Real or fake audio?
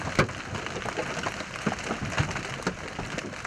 real